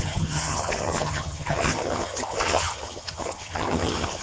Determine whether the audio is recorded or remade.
remade